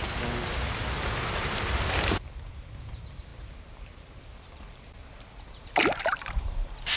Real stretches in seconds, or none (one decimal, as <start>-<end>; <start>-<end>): 0.0-2.5; 5.0-6.0